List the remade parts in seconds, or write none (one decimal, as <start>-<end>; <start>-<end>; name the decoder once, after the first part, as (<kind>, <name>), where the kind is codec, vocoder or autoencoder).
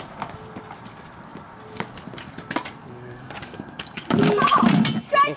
2.8-4.6 (codec, DAC)